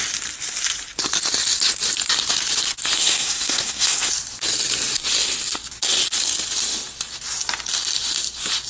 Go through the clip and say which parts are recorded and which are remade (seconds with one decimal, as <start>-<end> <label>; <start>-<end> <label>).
0.0-3.0 recorded; 3.0-4.1 remade; 4.1-8.7 recorded